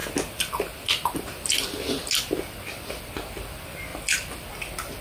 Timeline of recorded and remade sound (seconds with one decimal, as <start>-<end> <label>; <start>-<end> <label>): 0.0-5.0 recorded

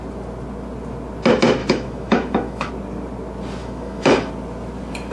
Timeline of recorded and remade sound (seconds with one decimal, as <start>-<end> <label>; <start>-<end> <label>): 0.0-1.6 recorded; 1.6-2.7 remade; 2.7-3.6 recorded; 3.6-4.3 remade; 4.3-5.1 recorded

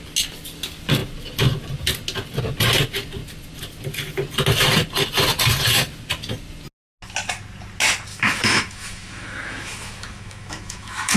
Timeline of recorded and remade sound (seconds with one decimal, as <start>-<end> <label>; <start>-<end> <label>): 0.0-8.1 recorded; 8.1-11.2 remade